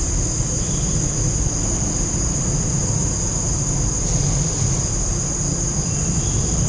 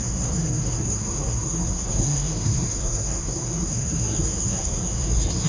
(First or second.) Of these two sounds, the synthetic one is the second